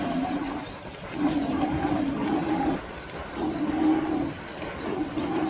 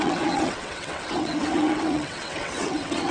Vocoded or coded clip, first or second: second